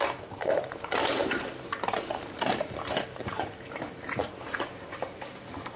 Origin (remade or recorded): remade